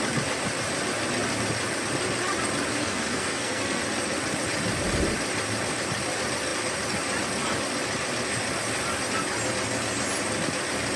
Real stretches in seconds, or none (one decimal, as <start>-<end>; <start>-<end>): 0.0-2.8; 3.8-11.0